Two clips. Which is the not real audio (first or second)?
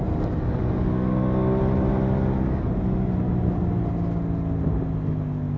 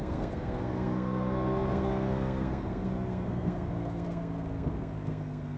second